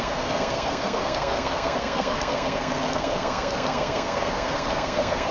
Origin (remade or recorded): remade